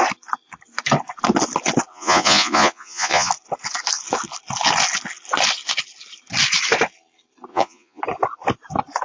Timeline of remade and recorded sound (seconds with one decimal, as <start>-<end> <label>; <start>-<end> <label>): 0.0-1.9 recorded; 1.9-3.3 remade; 3.3-7.5 recorded; 7.5-8.0 remade; 8.0-9.0 recorded